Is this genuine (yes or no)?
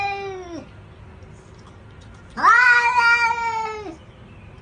yes